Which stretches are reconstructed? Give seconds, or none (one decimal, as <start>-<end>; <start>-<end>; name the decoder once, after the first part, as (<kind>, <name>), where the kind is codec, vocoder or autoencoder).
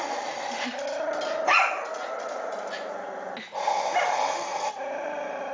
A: none